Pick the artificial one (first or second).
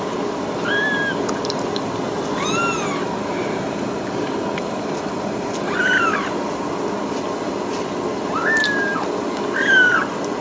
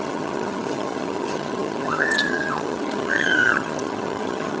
second